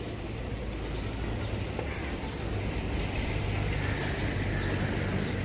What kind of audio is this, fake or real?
real